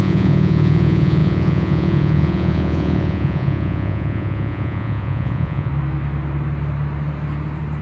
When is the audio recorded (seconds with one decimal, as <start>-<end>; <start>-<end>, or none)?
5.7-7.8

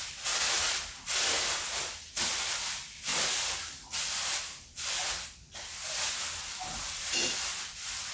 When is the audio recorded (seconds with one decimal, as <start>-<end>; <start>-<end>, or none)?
none

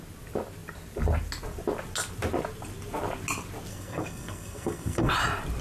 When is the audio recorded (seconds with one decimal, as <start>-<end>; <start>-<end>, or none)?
0.0-3.7; 5.1-5.6

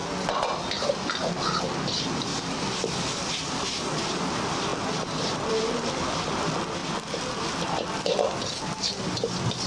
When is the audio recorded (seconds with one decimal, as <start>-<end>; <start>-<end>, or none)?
0.0-1.6